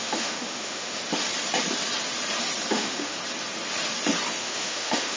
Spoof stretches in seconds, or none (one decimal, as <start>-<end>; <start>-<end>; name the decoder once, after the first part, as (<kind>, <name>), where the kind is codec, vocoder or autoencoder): 0.0-1.0 (autoencoder, DAC-VAE); 2.7-3.2; 4.4-5.2